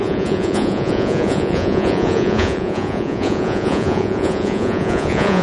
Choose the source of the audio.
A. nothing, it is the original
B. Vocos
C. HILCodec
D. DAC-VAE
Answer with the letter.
B